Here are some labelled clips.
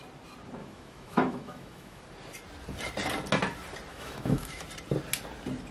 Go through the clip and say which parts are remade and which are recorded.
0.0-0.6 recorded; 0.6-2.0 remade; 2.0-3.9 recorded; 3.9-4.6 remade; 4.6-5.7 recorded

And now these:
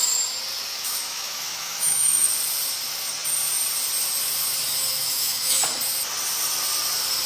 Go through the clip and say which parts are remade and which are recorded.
0.0-0.7 recorded; 0.7-2.3 remade; 2.3-4.9 recorded; 4.9-5.6 remade; 5.6-7.3 recorded

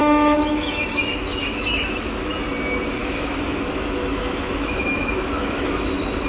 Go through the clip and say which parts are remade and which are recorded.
0.0-2.3 remade; 2.3-3.0 recorded; 3.0-5.7 remade; 5.7-6.3 recorded

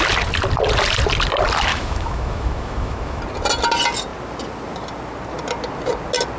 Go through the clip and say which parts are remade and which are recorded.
0.0-1.7 recorded; 1.7-3.2 remade; 3.2-6.4 recorded

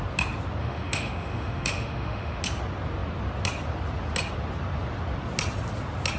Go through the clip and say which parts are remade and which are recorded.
0.0-0.6 recorded; 0.6-2.4 remade; 2.4-6.2 recorded

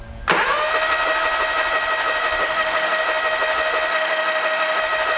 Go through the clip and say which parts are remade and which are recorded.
0.0-2.4 recorded; 2.4-3.0 remade; 3.0-3.9 recorded; 3.9-4.8 remade; 4.8-5.2 recorded

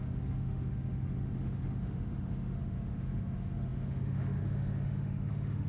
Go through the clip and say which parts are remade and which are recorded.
0.0-5.7 remade

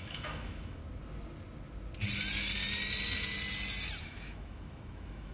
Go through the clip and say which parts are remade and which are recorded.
0.0-0.8 remade; 0.8-4.0 recorded; 4.0-5.3 remade